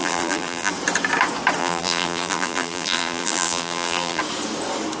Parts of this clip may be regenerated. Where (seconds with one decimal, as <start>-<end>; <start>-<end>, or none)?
0.0-0.7; 1.6-4.2